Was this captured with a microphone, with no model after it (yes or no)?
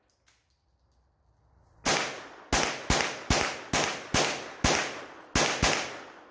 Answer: yes